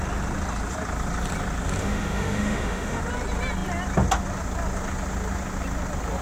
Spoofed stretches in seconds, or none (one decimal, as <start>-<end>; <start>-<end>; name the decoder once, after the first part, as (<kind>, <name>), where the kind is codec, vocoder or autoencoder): 1.8-3.0 (autoencoder, DAC-VAE)